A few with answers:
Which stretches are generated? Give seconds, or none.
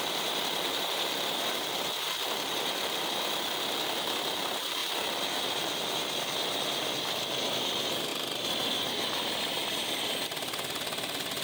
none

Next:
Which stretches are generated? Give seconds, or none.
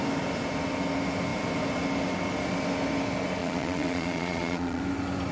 3.4-4.8 (vocoder, Vocos)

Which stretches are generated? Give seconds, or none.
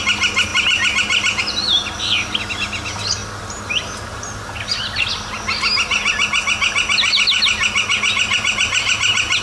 none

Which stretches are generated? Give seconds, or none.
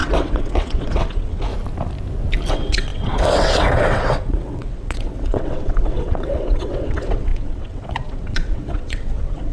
0.0-1.5 (vocoder, WaveNeXt); 2.5-9.5